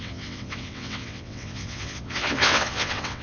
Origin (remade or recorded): remade